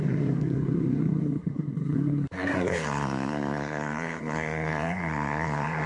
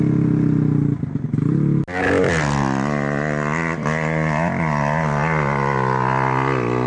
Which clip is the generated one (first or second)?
first